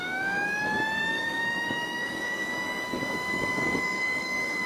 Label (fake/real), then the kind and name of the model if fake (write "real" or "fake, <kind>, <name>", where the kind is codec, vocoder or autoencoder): fake, codec, DAC